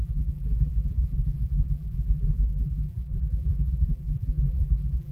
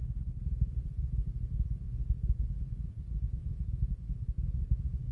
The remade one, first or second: first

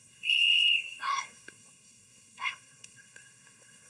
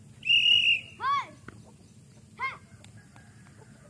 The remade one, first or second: first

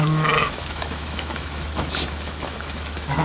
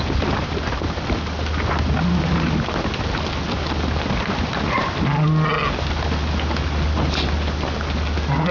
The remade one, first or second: first